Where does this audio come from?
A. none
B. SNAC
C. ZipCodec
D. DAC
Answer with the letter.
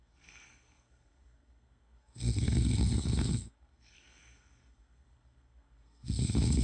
B